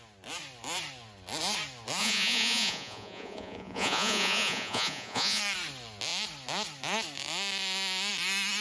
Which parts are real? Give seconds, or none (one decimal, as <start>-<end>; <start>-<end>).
0.0-2.0; 5.4-8.6